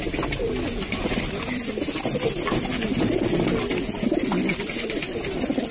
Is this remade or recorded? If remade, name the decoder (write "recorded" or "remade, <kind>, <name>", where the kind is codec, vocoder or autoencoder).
recorded